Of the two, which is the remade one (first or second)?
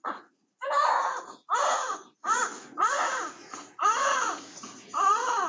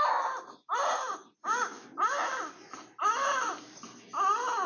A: first